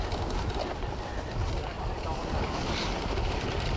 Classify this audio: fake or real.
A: real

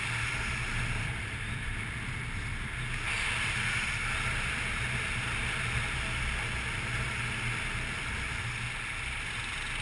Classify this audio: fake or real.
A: real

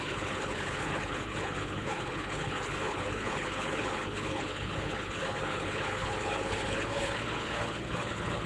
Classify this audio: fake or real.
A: fake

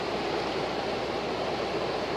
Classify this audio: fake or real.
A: real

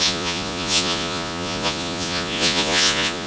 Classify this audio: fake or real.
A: fake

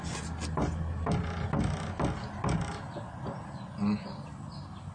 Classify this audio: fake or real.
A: real